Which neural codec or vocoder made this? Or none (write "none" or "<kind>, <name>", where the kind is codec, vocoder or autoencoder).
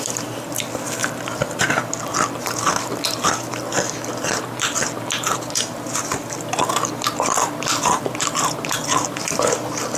vocoder, BigVGAN v2